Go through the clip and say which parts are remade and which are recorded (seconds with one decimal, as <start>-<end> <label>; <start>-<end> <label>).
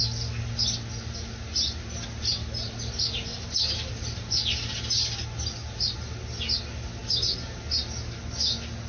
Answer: 0.0-3.3 recorded; 3.3-3.9 remade; 3.9-8.9 recorded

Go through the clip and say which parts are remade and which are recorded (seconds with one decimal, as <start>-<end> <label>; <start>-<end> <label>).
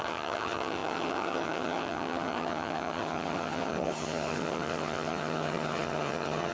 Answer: 0.0-6.5 remade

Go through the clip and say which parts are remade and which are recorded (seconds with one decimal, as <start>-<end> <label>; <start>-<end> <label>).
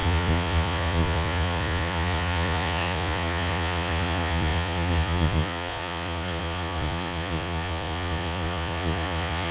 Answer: 0.0-9.5 remade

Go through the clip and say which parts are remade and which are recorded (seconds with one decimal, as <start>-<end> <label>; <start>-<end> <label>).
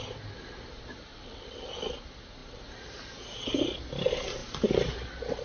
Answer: 0.0-1.1 recorded; 1.1-1.7 remade; 1.7-5.4 recorded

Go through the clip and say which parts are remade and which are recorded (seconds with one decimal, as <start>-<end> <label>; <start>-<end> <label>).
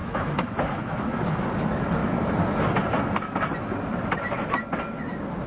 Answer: 0.0-0.8 remade; 0.8-5.5 recorded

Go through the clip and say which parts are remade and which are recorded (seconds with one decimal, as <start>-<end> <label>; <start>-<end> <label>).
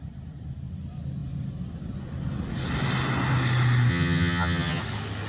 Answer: 0.0-3.9 recorded; 3.9-4.8 remade; 4.8-5.3 recorded